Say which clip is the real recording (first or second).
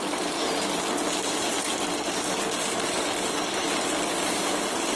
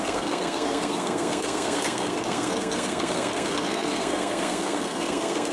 first